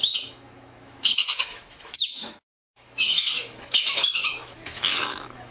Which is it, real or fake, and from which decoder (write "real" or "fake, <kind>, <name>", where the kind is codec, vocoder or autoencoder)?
fake, autoencoder, DAC-VAE